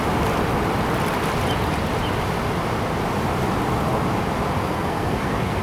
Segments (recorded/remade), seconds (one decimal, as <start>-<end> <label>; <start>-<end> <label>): 0.0-4.6 recorded; 4.6-5.6 remade